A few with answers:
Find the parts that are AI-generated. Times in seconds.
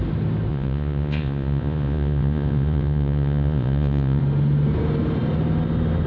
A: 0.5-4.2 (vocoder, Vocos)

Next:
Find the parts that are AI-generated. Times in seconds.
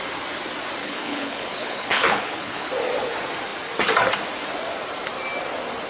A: 0.8-2.7 (codec, HILCodec)